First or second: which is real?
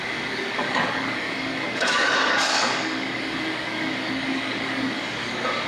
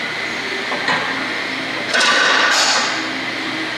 second